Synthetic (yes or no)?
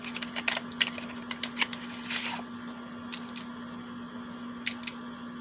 no